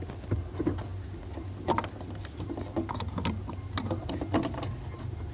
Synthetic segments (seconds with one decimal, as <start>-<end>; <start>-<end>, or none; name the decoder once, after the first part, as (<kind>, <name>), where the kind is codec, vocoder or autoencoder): none